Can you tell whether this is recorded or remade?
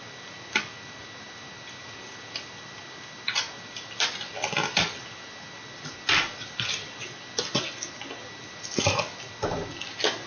recorded